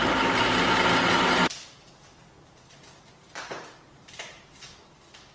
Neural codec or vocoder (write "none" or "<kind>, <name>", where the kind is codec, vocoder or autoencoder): none